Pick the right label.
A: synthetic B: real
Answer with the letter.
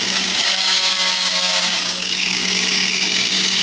A